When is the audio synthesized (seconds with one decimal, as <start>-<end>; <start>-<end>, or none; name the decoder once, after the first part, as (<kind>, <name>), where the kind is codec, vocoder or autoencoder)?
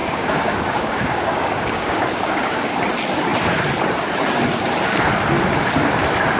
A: 0.0-2.8 (codec, DAC)